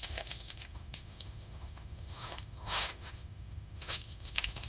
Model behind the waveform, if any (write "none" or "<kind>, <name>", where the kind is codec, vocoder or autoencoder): autoencoder, DAC-VAE